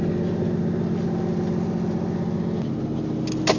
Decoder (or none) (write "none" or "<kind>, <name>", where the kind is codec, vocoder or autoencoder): none